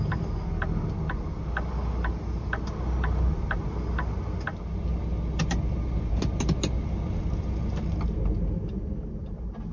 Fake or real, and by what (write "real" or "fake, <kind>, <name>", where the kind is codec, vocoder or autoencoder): real